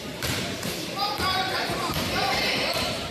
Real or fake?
fake